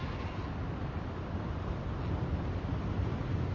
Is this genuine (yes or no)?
yes